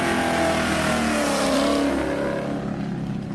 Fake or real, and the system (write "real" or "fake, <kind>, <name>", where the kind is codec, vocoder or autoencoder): real